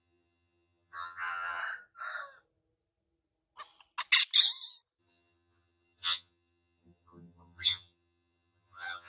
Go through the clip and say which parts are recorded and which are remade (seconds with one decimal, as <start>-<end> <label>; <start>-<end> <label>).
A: 0.0-1.6 remade; 1.6-5.0 recorded; 5.0-9.1 remade